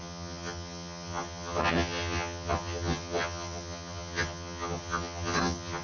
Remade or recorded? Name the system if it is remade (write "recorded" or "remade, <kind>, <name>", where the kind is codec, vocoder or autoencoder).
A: remade, vocoder, HiFi-GAN